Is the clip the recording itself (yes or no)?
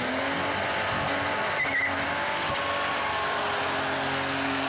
yes